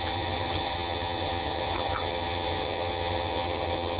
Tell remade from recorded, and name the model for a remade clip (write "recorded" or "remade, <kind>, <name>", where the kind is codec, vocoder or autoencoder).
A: remade, vocoder, HiFi-GAN